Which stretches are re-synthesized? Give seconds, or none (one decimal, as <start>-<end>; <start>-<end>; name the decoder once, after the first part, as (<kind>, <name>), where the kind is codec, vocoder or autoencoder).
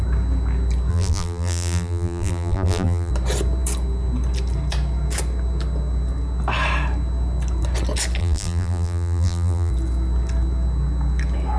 0.9-3.1 (vocoder, BigVGAN v2); 8.2-9.7